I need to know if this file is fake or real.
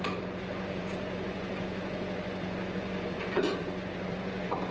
fake